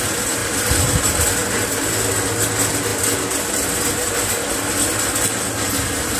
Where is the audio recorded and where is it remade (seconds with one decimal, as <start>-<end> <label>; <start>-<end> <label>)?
0.0-0.4 recorded; 0.4-1.0 remade; 1.0-2.9 recorded; 2.9-4.5 remade; 4.5-6.2 recorded